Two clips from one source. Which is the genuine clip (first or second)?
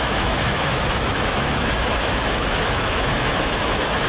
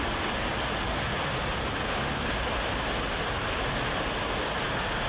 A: second